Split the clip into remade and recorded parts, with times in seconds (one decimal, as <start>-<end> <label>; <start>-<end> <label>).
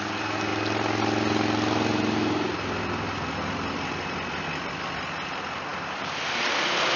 0.0-5.7 recorded; 5.7-7.0 remade